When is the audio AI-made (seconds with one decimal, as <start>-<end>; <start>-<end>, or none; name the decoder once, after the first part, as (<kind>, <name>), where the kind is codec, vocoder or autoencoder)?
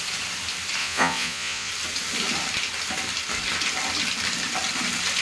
0.8-1.7 (vocoder, Vocos)